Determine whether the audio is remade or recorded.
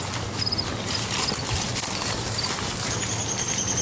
recorded